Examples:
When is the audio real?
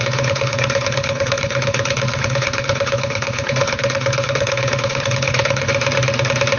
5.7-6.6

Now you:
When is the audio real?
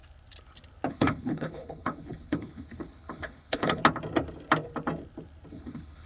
0.0-0.9; 3.8-5.5